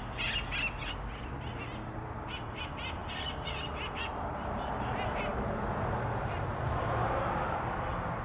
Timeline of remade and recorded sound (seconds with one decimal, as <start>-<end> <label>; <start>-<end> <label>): 0.0-8.2 recorded